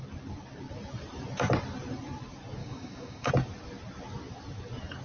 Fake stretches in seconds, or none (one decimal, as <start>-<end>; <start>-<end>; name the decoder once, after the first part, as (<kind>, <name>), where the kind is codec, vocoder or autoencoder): 2.6-3.3 (codec, DAC)